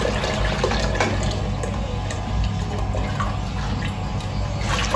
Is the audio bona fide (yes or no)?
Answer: yes